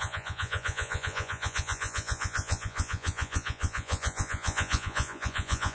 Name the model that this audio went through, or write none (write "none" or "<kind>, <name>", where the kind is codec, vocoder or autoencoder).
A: vocoder, Vocos